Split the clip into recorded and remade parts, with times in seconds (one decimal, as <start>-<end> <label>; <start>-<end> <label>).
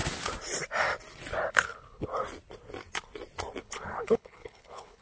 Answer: 0.0-1.5 recorded; 1.5-2.1 remade; 2.1-3.6 recorded; 3.6-5.0 remade